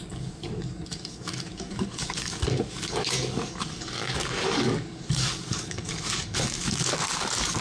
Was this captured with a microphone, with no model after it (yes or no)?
no